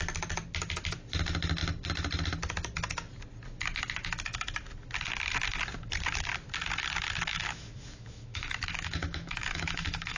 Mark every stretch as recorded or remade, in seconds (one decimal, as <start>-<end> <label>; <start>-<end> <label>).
0.0-7.3 recorded; 7.3-10.2 remade